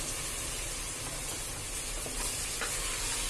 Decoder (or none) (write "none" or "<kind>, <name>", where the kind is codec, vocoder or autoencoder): none